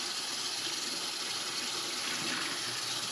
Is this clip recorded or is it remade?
recorded